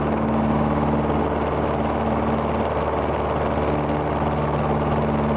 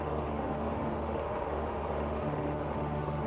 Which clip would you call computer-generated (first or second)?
second